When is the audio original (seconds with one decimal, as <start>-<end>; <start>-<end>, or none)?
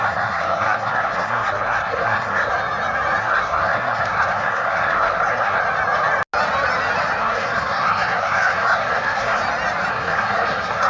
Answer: 2.5-3.2; 5.6-7.2; 9.4-9.9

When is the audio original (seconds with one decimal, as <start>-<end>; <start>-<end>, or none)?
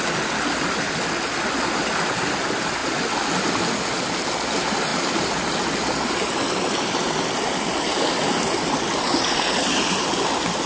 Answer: 0.0-10.7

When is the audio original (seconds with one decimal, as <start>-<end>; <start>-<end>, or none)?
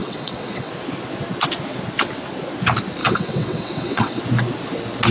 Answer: 0.7-3.0; 4.2-5.1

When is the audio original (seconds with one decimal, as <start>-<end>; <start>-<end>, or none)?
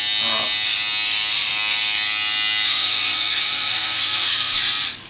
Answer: 0.0-2.7; 4.6-5.1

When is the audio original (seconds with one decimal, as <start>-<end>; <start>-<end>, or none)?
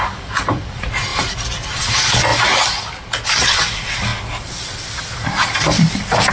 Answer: 2.3-3.3; 4.1-6.3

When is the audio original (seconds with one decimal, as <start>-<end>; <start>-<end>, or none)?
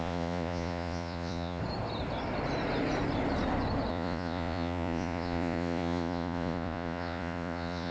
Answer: 1.6-3.9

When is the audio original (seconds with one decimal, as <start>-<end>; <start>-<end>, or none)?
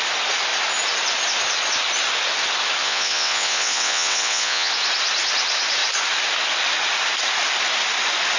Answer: 0.0-2.8; 4.7-8.4